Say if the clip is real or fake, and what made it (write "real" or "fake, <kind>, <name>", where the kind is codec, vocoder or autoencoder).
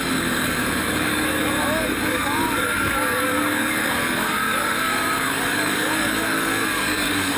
fake, codec, DAC